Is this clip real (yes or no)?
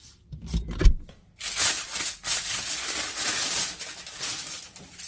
yes